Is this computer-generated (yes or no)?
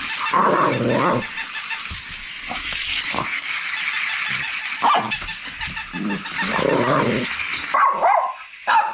no